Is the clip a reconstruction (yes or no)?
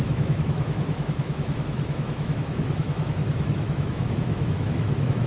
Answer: yes